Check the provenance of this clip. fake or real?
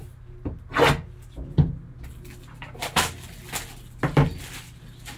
real